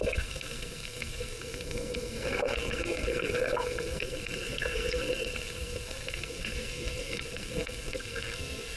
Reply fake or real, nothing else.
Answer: fake